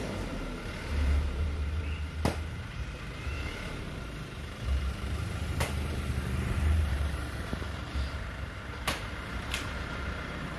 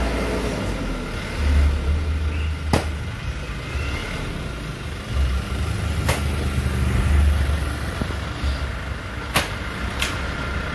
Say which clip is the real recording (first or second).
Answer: second